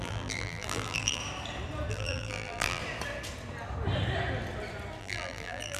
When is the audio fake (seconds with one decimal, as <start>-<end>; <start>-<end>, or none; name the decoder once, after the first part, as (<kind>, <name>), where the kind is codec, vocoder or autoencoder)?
0.0-1.2 (vocoder, BigVGAN v2); 1.9-2.8; 5.0-5.8

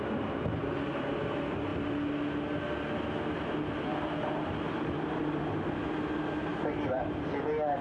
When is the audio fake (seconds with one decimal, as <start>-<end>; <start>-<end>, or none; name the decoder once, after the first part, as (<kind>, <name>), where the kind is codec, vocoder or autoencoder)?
3.9-5.4 (vocoder, BigVGAN v2); 6.5-7.3

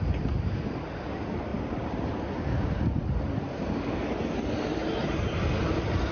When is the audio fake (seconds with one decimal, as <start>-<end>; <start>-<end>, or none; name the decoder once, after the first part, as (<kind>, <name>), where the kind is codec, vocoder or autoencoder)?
1.5-2.1 (vocoder, BigVGAN v2); 4.8-5.4

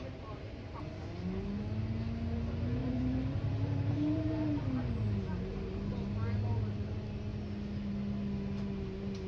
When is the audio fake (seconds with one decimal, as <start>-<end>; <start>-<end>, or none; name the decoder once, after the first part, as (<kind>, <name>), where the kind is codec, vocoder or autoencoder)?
2.8-4.6 (vocoder, BigVGAN v2)

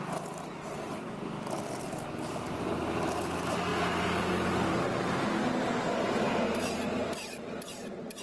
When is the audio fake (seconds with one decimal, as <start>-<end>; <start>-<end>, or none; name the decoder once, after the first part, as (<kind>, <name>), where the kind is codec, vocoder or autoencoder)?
none

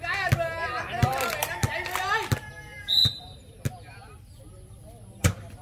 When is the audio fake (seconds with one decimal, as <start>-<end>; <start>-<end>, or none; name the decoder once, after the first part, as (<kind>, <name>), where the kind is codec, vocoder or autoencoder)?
none

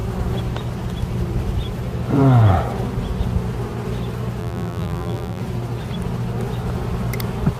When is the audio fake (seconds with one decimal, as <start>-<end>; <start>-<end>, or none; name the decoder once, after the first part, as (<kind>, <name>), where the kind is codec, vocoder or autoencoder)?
4.4-5.4 (vocoder, BigVGAN v2)

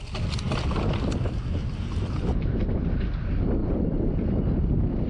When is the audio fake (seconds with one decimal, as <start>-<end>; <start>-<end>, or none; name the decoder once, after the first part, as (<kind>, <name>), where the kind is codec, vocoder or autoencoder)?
1.6-2.3 (vocoder, BigVGAN v2); 3.6-4.3